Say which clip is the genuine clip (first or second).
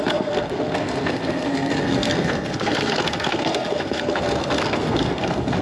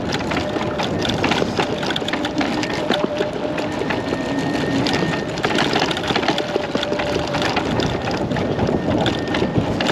second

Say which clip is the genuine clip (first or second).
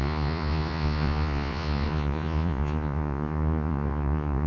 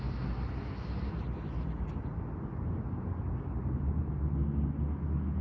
second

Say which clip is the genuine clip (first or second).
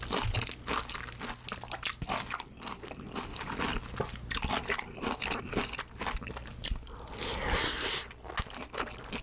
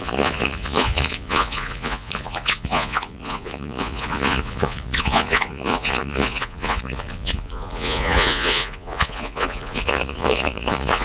first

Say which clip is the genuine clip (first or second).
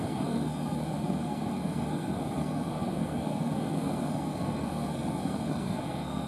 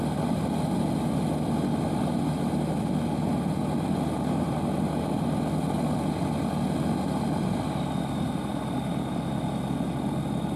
second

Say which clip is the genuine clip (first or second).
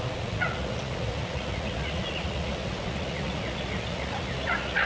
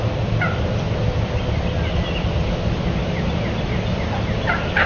second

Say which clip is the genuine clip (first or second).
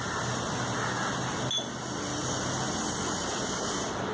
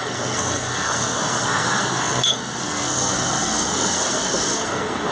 first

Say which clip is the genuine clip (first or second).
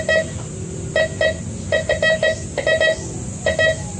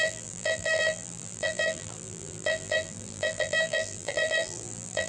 first